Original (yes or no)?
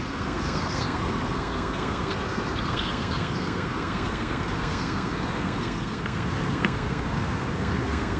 no